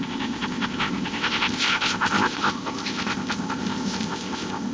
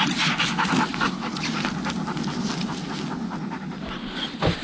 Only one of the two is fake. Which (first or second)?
first